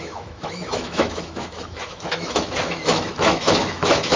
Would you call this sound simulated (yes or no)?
yes